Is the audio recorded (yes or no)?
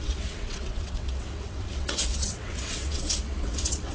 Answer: no